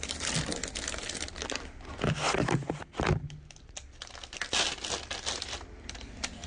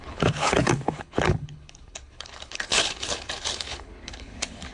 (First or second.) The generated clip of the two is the second